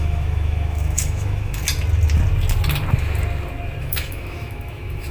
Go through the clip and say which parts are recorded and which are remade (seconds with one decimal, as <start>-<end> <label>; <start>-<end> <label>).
0.0-1.6 remade; 1.6-3.8 recorded; 3.8-5.1 remade